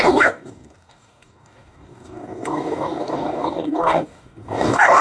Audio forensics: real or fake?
fake